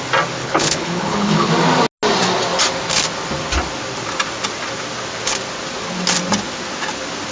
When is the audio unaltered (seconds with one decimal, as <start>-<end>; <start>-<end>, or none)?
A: 0.0-0.4; 1.5-7.3